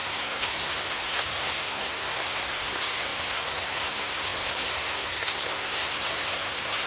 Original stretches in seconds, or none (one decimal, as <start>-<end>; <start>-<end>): none